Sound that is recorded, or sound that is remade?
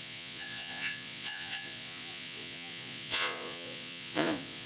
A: remade